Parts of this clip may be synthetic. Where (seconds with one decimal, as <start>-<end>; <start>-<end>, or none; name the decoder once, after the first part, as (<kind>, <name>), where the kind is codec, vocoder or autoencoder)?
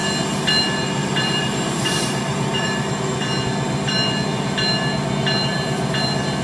1.0-2.9 (vocoder, BigVGAN v2)